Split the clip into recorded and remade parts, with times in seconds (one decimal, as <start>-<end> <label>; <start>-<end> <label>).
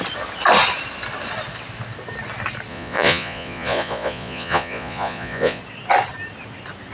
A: 0.0-2.7 recorded; 2.7-5.6 remade; 5.6-6.9 recorded